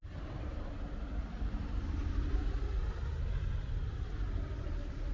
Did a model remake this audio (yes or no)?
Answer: no